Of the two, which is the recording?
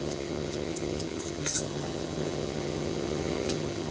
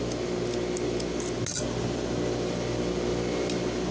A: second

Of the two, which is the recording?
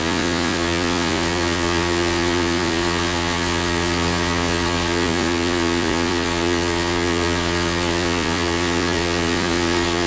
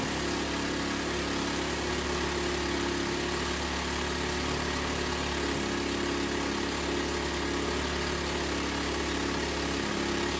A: second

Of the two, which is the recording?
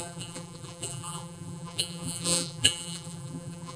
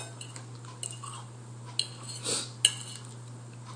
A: second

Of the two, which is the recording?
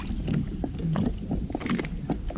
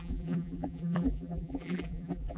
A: first